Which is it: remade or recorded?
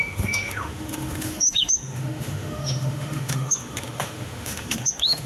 remade